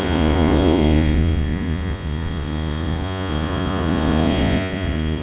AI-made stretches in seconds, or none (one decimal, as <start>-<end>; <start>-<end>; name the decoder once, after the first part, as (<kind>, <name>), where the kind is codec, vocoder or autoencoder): 0.0-5.2 (vocoder, Vocos)